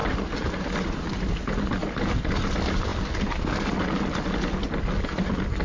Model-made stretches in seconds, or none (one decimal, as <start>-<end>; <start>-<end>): none